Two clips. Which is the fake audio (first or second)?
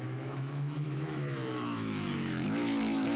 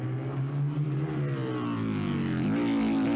first